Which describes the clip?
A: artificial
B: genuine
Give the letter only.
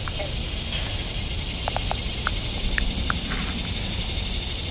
B